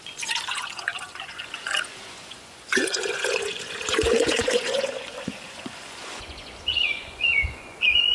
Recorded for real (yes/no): no